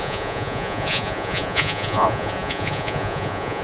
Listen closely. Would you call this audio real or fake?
fake